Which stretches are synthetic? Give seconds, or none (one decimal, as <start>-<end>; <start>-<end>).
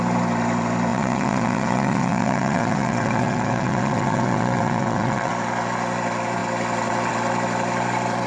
0.9-5.3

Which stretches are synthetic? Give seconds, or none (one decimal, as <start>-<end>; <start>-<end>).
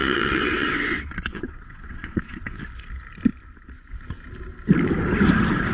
0.0-2.6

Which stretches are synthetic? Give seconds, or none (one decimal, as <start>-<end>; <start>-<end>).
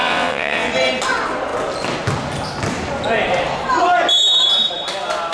0.0-0.7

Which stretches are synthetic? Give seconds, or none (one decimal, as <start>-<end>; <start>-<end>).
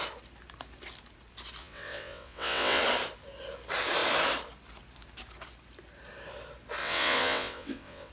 1.6-2.8; 6.8-8.1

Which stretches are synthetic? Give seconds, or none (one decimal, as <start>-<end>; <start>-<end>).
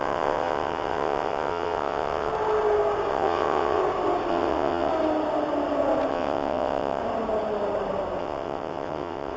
0.0-2.3; 3.1-3.8; 4.3-4.9; 6.1-7.0; 8.2-9.4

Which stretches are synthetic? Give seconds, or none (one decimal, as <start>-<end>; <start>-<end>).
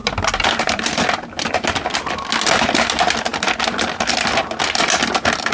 none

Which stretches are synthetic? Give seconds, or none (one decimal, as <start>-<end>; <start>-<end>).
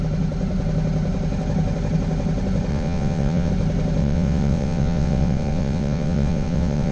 2.7-3.5; 4.0-6.9